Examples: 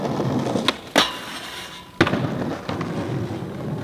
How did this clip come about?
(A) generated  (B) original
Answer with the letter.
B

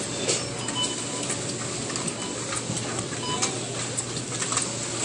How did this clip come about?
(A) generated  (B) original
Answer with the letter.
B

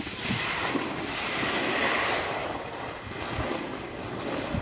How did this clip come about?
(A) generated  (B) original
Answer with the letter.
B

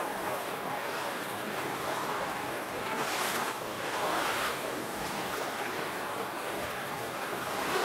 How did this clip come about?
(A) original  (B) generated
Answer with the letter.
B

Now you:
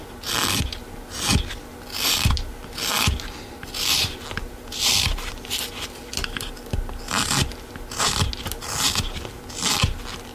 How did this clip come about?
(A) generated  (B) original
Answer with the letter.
B